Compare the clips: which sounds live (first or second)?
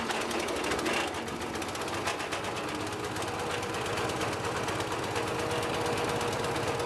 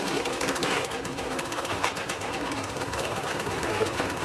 first